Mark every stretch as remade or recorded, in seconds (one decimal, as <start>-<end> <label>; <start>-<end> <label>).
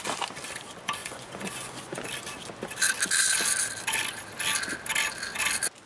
0.0-1.0 recorded; 1.0-2.1 remade; 2.1-5.9 recorded